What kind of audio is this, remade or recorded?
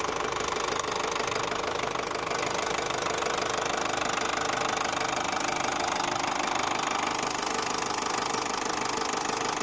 recorded